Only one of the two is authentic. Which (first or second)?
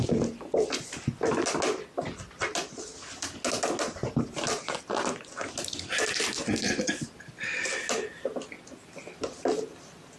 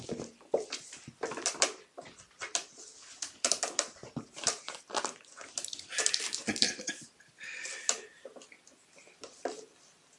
first